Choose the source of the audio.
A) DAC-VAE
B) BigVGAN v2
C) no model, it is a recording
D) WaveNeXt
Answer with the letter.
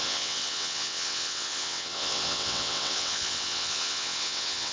D